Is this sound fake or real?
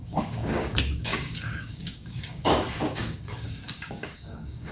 fake